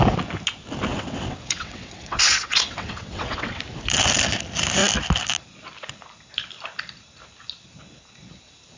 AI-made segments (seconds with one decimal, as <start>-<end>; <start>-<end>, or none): 0.9-3.6